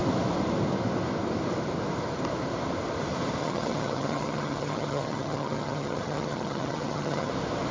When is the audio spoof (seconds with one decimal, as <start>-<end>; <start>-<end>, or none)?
3.4-7.3

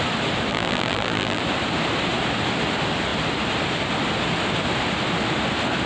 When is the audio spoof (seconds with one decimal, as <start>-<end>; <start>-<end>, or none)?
0.5-1.4